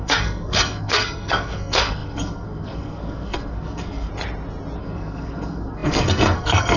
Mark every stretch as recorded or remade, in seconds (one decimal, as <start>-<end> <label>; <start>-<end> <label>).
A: 0.0-4.1 remade; 4.1-4.8 recorded; 4.8-6.8 remade

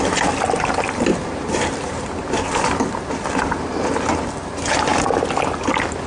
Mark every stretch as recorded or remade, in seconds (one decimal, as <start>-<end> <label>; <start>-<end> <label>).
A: 0.0-1.2 recorded; 1.2-3.0 remade; 3.0-6.1 recorded

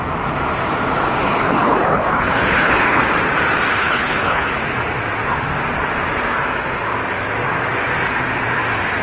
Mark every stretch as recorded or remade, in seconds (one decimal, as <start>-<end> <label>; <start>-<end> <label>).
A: 0.0-1.4 recorded; 1.4-3.0 remade; 3.0-3.7 recorded; 3.7-4.5 remade; 4.5-9.0 recorded

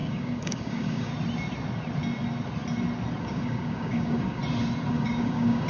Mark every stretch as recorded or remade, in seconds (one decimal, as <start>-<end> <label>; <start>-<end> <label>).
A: 0.0-1.1 remade; 1.1-3.2 recorded; 3.2-4.4 remade; 4.4-4.9 recorded; 4.9-5.7 remade

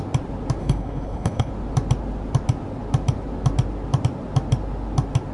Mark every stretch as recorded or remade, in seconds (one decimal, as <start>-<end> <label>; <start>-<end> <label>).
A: 0.0-0.6 recorded; 0.6-1.5 remade; 1.5-5.3 recorded

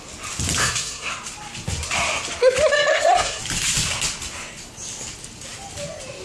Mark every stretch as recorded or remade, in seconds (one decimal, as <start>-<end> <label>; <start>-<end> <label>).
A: 0.0-0.6 recorded; 0.6-1.1 remade; 1.1-2.9 recorded; 2.9-3.4 remade; 3.4-6.2 recorded

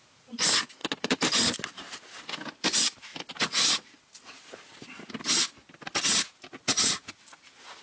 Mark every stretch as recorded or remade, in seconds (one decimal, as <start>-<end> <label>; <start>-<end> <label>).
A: 0.0-7.8 recorded

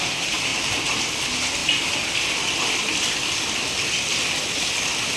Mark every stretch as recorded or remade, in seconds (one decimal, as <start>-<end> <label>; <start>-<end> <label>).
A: 0.0-0.5 recorded; 0.5-1.0 remade; 1.0-5.2 recorded